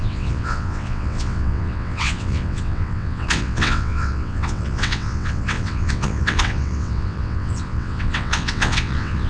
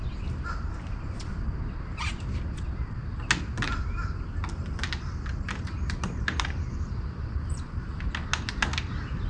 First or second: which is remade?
first